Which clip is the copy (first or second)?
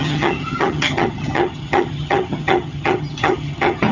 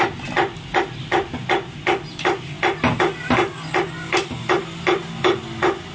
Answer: first